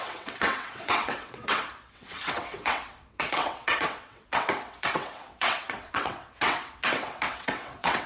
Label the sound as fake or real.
fake